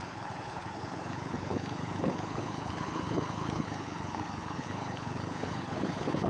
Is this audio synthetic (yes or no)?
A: yes